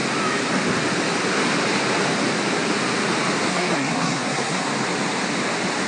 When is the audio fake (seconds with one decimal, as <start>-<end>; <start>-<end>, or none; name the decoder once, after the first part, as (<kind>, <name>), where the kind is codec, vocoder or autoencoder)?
3.5-4.7 (codec, SNAC)